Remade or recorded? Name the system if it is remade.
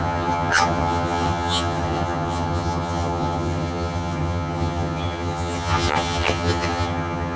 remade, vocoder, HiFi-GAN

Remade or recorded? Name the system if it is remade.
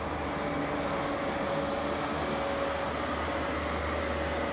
recorded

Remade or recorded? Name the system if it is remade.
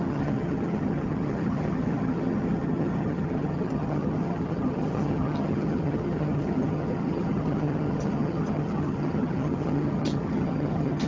remade, vocoder, HiFi-GAN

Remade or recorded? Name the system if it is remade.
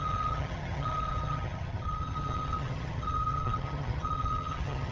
remade, vocoder, HiFi-GAN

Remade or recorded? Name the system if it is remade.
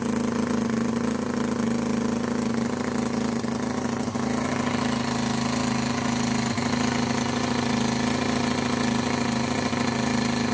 recorded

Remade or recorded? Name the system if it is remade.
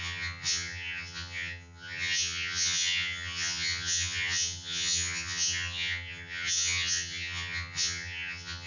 remade, vocoder, HiFi-GAN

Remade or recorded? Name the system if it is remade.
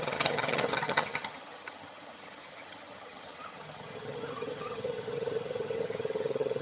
remade, vocoder, HiFi-GAN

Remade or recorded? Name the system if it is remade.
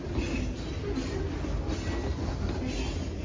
recorded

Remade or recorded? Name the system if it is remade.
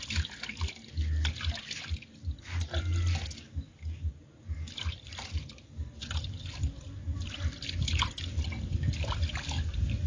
recorded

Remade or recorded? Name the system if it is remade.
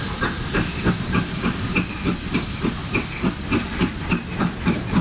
recorded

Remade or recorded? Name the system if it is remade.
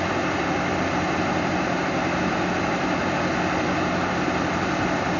recorded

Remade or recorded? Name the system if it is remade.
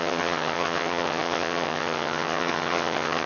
remade, vocoder, HiFi-GAN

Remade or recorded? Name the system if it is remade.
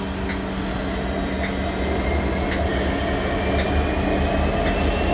recorded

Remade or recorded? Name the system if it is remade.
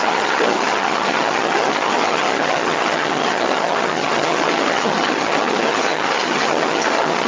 remade, vocoder, HiFi-GAN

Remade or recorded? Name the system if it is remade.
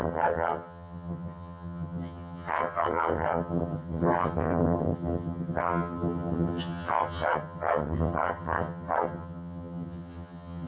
remade, vocoder, HiFi-GAN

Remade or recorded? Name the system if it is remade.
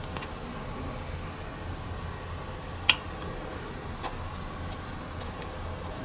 recorded